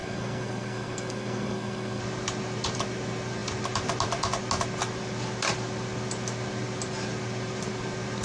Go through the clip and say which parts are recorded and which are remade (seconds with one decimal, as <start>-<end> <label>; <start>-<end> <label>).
0.0-2.0 remade; 2.0-8.2 recorded